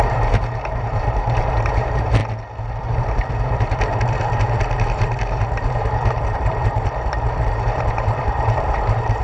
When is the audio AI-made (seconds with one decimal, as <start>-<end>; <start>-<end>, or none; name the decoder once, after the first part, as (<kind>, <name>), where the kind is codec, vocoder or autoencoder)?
0.0-2.2 (vocoder, BigVGAN v2); 2.8-9.2